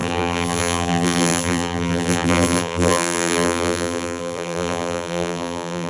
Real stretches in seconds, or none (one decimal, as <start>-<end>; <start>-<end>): none